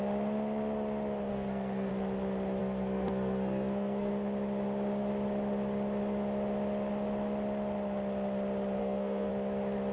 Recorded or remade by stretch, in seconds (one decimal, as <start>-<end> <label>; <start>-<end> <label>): 0.0-1.3 recorded; 1.3-1.9 remade; 1.9-2.6 recorded; 2.6-4.1 remade; 4.1-8.8 recorded; 8.8-9.3 remade; 9.3-9.9 recorded